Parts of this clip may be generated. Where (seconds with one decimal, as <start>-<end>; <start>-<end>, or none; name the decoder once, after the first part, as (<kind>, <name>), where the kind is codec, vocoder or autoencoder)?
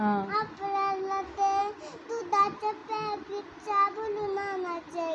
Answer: none